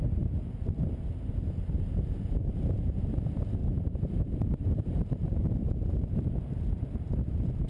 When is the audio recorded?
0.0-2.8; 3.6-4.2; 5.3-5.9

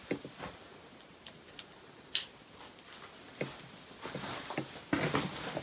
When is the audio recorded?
0.0-5.6

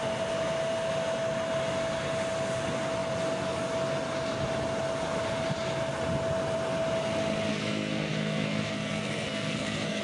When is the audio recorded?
0.0-7.5

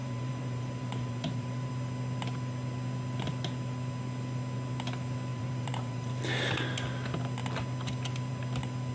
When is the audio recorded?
1.7-5.3; 6.1-8.9

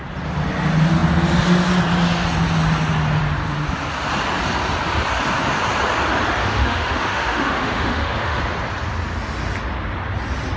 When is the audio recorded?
0.0-6.4; 8.4-10.6